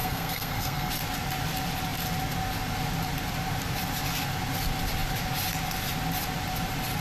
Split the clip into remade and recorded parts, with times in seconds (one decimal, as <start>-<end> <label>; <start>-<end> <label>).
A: 0.0-0.9 remade; 0.9-7.0 recorded

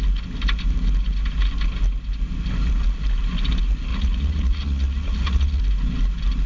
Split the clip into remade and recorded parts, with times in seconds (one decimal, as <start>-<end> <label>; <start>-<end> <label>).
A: 0.0-3.9 recorded; 3.9-5.6 remade; 5.6-6.5 recorded

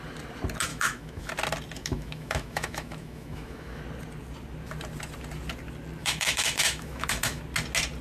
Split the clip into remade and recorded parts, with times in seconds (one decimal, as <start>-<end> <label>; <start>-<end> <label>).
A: 0.0-0.7 recorded; 0.7-1.3 remade; 1.3-1.8 recorded; 1.8-3.8 remade; 3.8-6.0 recorded; 6.0-7.4 remade; 7.4-8.0 recorded